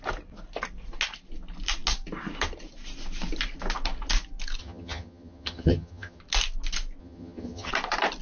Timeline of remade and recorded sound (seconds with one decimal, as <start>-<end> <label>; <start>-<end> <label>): 0.0-4.6 recorded; 4.6-6.2 remade; 6.2-7.0 recorded; 7.0-7.7 remade; 7.7-8.2 recorded